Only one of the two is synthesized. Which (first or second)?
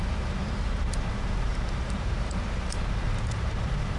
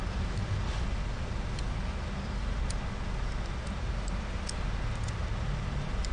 first